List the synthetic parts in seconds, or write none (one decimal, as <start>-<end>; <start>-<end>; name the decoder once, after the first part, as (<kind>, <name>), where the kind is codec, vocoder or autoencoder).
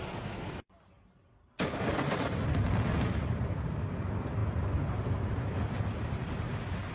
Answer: none